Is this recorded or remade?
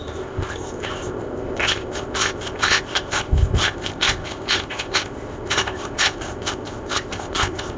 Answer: remade